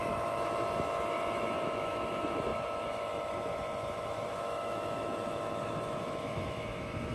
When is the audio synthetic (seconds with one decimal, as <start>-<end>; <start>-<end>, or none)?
0.0-7.1